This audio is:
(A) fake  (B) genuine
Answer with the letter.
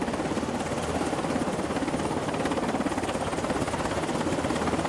B